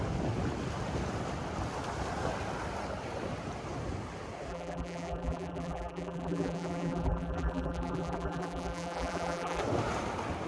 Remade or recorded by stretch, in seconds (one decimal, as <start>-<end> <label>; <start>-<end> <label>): 0.0-4.5 recorded; 4.5-9.6 remade; 9.6-10.5 recorded